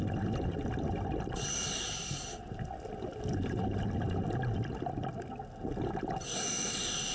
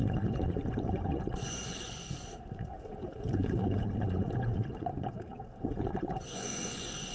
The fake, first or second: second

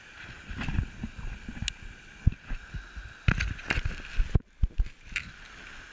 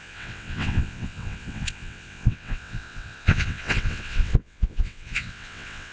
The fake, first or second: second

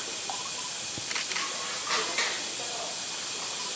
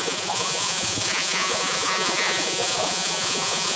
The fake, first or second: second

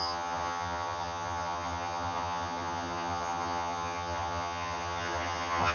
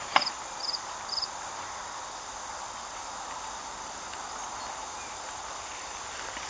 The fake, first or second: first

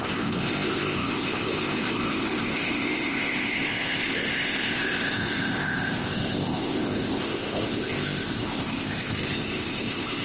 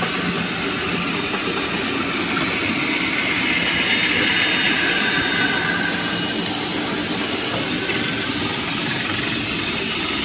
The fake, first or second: first